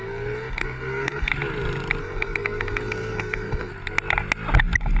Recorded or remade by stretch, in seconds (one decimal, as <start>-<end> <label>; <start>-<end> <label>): 0.0-1.3 remade; 1.3-2.0 recorded; 2.0-3.7 remade; 3.7-5.0 recorded